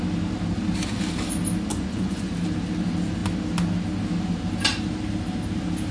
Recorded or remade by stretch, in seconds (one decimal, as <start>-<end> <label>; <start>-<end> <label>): 0.0-1.7 recorded; 1.7-2.3 remade; 2.3-5.9 recorded